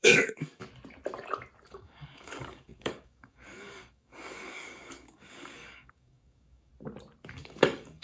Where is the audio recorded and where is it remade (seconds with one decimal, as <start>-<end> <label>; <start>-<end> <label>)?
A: 0.0-0.6 remade; 0.6-1.7 recorded; 1.7-6.7 remade; 6.7-7.3 recorded; 7.3-8.0 remade